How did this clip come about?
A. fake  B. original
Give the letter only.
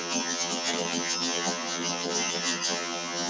A